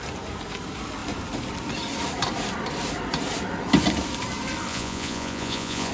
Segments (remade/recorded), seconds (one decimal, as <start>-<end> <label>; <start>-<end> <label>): 0.0-4.7 recorded; 4.7-5.9 remade